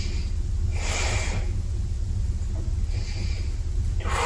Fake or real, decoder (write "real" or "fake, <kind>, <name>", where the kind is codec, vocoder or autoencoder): real